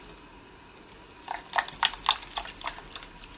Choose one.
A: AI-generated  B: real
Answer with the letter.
B